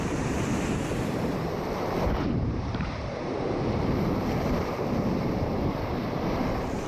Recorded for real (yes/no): no